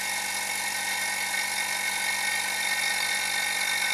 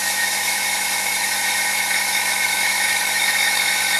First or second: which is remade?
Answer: second